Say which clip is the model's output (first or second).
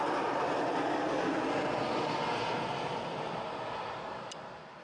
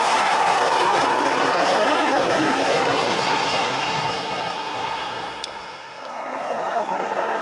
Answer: second